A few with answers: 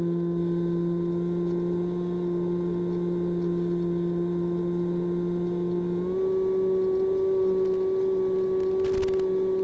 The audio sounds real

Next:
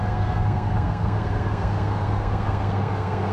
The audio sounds fake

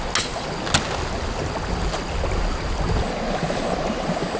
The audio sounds real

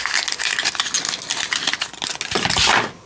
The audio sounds real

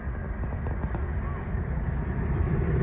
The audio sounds real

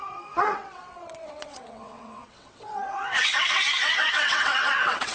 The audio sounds fake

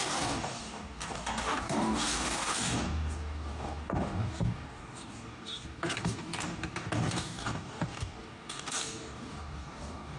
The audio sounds fake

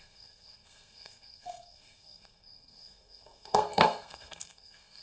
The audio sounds fake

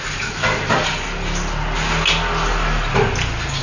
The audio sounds real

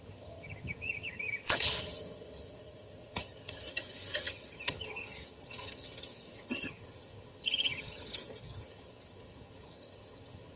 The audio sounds fake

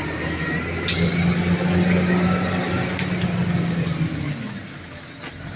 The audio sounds real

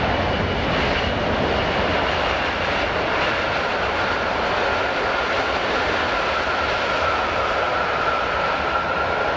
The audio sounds real